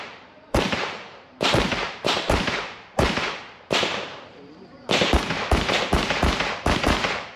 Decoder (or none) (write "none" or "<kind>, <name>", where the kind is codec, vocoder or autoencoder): vocoder, BigVGAN v2